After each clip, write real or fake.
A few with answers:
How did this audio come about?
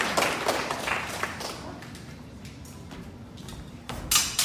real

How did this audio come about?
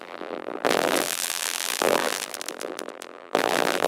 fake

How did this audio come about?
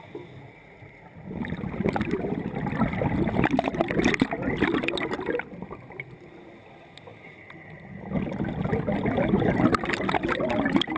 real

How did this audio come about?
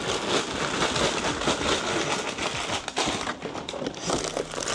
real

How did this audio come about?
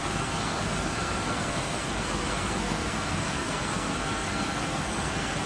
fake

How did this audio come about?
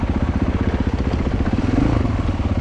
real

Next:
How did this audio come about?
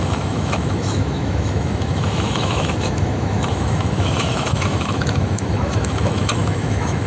fake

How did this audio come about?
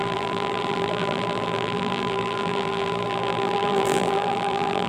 fake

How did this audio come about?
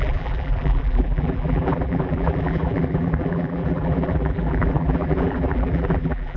fake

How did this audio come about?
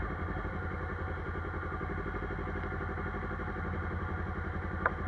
real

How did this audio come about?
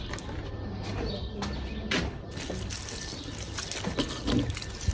real